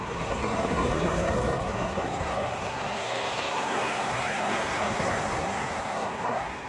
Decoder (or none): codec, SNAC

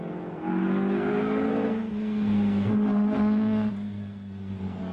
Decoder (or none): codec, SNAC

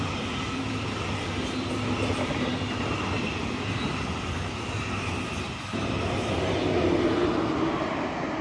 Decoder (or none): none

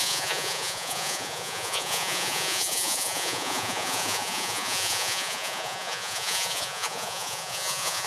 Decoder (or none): vocoder, Vocos